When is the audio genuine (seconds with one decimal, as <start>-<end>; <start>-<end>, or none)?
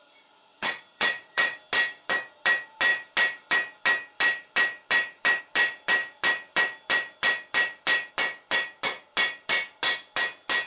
0.0-0.5; 1.6-10.7